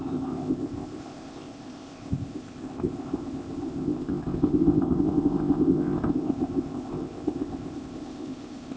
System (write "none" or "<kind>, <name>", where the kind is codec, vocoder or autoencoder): codec, ZipCodec